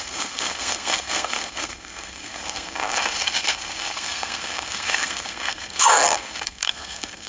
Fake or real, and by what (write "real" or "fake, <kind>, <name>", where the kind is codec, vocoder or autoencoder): fake, codec, SNAC